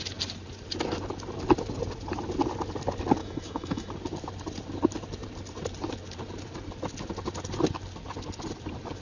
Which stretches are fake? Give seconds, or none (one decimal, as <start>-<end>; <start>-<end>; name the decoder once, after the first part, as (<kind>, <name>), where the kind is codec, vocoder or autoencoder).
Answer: 3.2-3.9 (autoencoder, DAC-VAE)